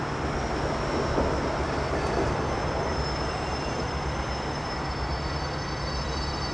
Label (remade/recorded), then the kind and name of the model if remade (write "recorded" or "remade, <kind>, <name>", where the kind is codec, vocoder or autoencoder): recorded